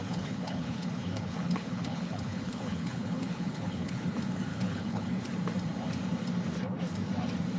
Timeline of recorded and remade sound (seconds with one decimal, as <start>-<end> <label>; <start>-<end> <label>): 0.0-4.0 remade; 4.0-4.5 recorded; 4.5-5.2 remade; 5.2-7.6 recorded